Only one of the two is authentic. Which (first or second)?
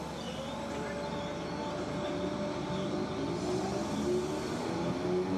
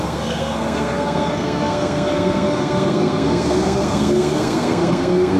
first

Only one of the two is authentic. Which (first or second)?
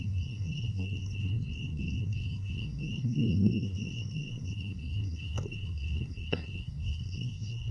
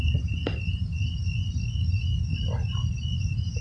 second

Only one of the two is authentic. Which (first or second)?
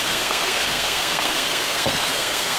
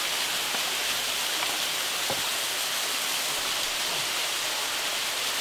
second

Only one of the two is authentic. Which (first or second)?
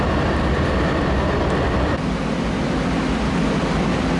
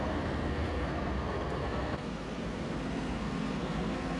first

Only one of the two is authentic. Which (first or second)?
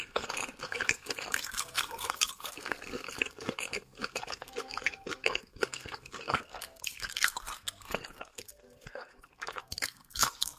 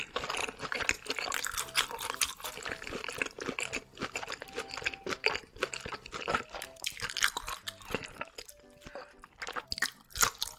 second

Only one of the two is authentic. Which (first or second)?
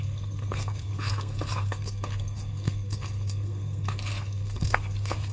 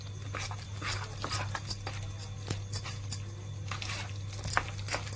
second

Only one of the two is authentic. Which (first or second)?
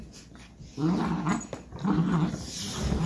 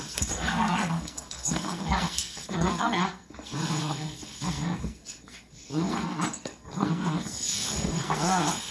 first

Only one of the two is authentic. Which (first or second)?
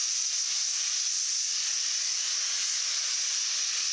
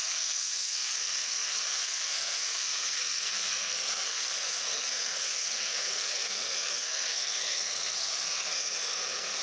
first